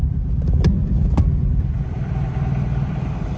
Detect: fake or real fake